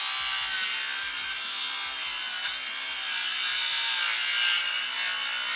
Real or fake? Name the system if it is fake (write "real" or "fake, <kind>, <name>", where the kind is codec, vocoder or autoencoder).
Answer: real